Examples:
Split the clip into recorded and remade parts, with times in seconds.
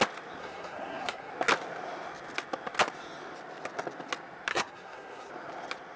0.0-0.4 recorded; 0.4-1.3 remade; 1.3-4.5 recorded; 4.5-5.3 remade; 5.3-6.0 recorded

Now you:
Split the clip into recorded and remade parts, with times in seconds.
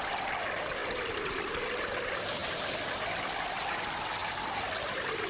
0.0-5.3 recorded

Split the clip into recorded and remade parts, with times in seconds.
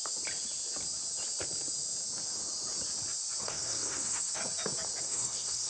0.0-3.4 recorded; 3.4-4.4 remade; 4.4-5.0 recorded; 5.0-5.7 remade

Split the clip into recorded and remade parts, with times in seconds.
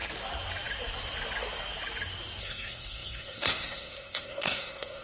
0.0-2.4 recorded; 2.4-5.0 remade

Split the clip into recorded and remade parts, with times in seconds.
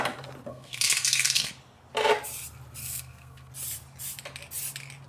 0.0-0.5 recorded; 0.5-1.5 remade; 1.5-2.8 recorded; 2.8-3.5 remade; 3.5-5.1 recorded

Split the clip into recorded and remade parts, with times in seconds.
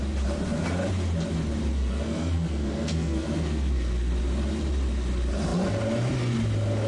0.0-1.7 recorded; 1.7-4.1 remade; 4.1-6.9 recorded